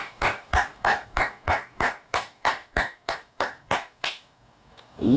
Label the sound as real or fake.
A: fake